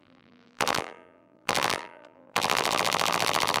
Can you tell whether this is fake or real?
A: fake